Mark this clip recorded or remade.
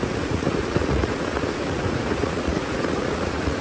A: remade